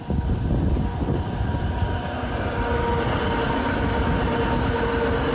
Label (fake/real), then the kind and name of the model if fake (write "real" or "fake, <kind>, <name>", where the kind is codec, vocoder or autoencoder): real